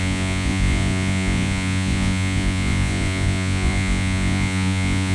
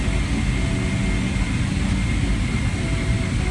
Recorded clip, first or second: second